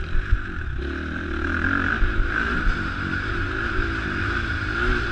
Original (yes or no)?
yes